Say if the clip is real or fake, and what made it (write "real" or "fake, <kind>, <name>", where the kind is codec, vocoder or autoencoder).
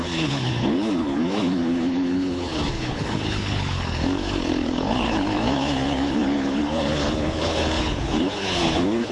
fake, codec, HILCodec